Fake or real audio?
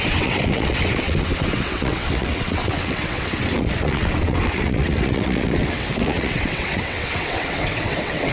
fake